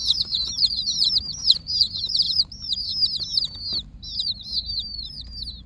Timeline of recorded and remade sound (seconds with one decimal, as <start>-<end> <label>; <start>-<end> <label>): 0.0-2.9 remade; 2.9-4.5 recorded; 4.5-5.3 remade; 5.3-5.7 recorded

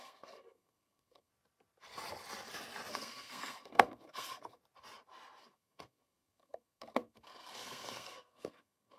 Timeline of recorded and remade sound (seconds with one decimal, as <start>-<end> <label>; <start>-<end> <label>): 0.0-1.3 remade; 1.3-2.9 recorded; 2.9-4.6 remade; 4.6-5.4 recorded; 5.4-9.0 remade

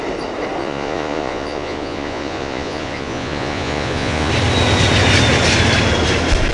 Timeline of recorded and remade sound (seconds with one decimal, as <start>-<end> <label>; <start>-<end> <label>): 0.0-0.6 recorded; 0.6-4.3 remade; 4.3-6.5 recorded

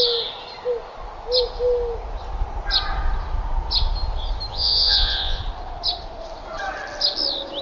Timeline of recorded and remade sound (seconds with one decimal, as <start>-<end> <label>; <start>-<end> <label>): 0.0-4.5 recorded; 4.5-5.4 remade; 5.4-7.6 recorded

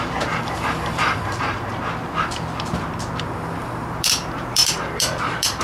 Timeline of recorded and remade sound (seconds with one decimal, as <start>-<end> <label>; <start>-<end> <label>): 0.0-1.7 remade; 1.7-3.6 recorded; 3.6-5.6 remade